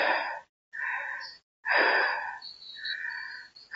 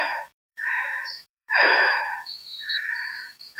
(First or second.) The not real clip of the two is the second